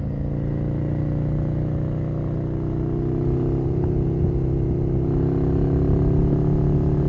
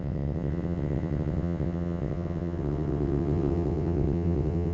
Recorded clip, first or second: first